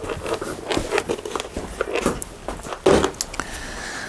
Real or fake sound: real